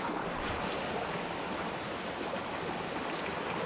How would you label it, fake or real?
real